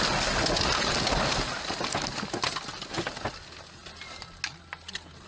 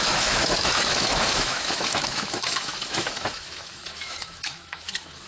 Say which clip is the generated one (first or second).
second